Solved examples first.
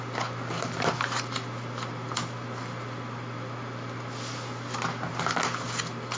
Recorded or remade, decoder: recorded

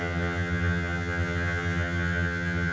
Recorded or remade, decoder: remade, vocoder, HiFi-GAN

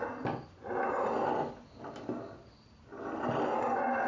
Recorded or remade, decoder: recorded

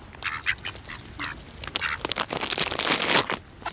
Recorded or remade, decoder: recorded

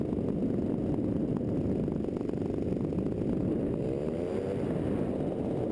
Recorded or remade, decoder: recorded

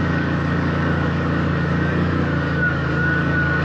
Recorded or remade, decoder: remade, codec, DAC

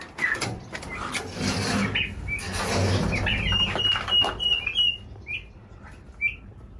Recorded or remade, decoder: recorded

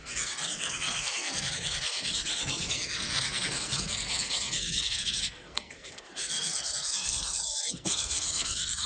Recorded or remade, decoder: remade, codec, SNAC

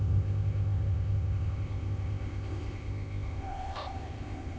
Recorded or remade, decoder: remade, codec, ZipCodec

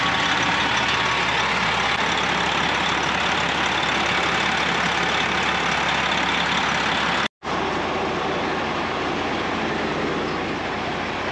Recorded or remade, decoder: recorded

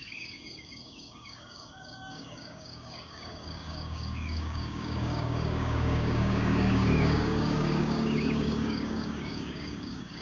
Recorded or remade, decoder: remade, codec, DAC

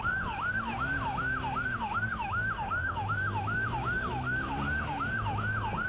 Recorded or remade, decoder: recorded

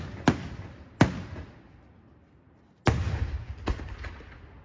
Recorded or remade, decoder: recorded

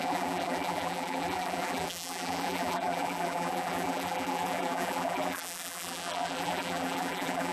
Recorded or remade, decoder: remade, vocoder, BigVGAN v2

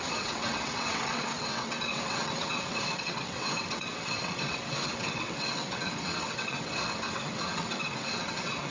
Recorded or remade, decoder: remade, vocoder, WaveNeXt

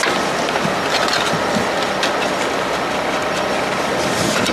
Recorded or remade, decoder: recorded